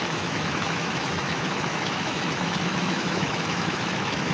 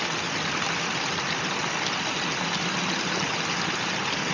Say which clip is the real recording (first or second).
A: second